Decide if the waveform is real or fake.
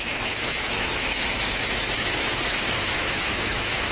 fake